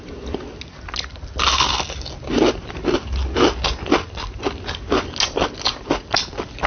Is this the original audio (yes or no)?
yes